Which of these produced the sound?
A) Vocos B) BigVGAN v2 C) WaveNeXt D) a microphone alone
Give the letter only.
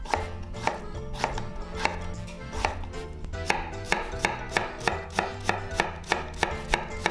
D